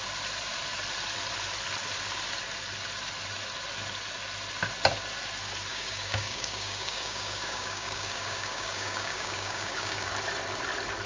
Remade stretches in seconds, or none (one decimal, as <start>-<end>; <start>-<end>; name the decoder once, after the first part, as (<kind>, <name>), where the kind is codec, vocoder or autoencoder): 5.7-10.1 (codec, DAC)